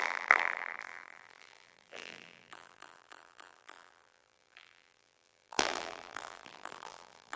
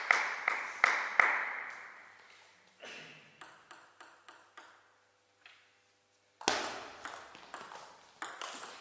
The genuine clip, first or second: second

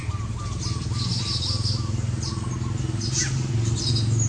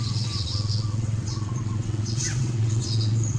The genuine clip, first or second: first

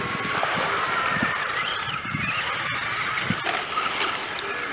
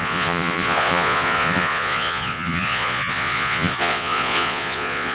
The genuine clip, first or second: first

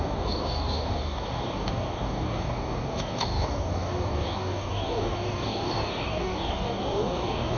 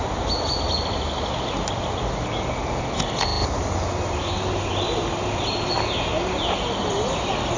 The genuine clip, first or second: second